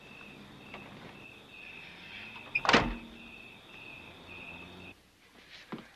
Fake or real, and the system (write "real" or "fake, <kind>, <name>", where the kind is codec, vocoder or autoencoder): real